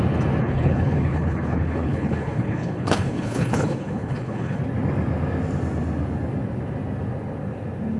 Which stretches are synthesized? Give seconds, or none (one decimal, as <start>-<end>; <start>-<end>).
0.4-4.6